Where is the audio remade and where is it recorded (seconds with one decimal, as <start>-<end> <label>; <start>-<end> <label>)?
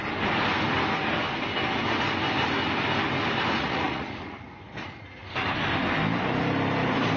0.0-3.6 recorded; 3.6-5.3 remade; 5.3-7.2 recorded